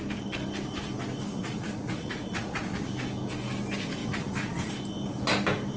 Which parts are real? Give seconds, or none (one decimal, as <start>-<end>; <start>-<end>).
0.0-1.3; 2.9-4.0; 4.7-5.8